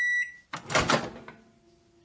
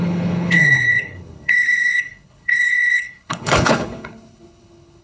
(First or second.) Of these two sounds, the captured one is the first